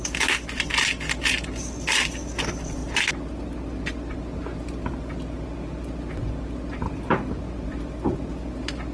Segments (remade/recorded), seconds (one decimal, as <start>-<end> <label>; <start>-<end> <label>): 0.0-8.9 recorded